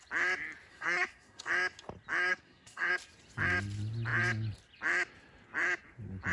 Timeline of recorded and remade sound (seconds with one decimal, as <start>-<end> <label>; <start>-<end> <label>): 0.0-0.7 recorded; 0.7-1.5 remade; 1.5-2.3 recorded; 2.3-2.9 remade; 2.9-6.3 recorded